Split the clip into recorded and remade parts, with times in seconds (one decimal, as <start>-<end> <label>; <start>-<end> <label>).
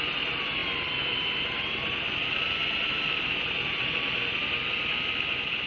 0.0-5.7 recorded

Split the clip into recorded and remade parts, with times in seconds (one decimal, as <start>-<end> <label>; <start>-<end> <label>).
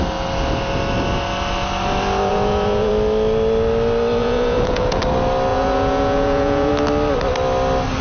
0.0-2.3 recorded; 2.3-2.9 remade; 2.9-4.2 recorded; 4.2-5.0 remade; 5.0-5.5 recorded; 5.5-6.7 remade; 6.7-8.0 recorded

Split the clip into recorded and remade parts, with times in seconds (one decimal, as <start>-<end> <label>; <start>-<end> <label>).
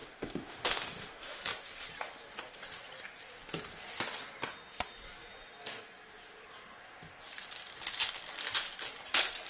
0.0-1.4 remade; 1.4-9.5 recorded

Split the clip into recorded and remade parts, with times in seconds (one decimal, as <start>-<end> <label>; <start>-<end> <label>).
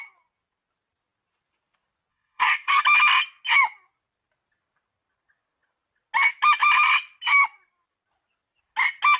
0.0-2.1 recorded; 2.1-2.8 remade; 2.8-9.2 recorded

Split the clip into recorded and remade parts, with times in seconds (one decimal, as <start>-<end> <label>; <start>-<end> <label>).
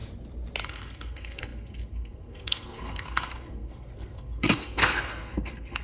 0.0-0.6 recorded; 0.6-5.8 remade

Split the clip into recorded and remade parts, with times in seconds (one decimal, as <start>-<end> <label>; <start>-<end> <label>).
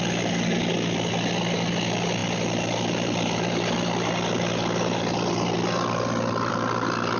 0.0-7.2 recorded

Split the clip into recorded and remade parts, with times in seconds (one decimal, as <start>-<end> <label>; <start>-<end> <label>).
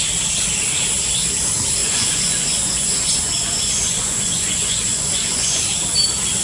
0.0-1.8 recorded; 1.8-5.6 remade; 5.6-6.4 recorded